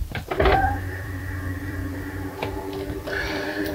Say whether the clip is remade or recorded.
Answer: remade